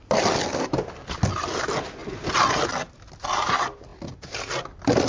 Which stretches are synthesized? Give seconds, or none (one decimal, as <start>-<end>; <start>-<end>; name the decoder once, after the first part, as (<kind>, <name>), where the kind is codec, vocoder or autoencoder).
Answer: none

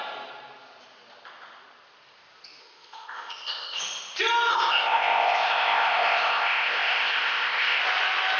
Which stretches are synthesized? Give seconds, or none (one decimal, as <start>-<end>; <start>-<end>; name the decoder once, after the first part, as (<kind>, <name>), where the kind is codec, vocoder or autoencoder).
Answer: 2.6-3.8 (codec, ZipCodec); 4.5-7.8

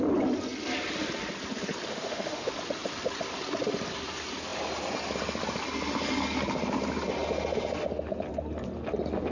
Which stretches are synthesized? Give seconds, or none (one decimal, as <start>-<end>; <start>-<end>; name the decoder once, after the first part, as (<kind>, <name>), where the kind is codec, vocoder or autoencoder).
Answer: 1.9-2.5 (autoencoder, DAC-VAE)

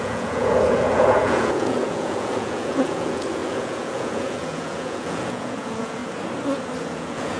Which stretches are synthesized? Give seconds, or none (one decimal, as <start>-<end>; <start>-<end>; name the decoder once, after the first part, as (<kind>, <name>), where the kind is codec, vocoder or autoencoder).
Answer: 0.0-6.0 (vocoder, Vocos); 6.8-7.4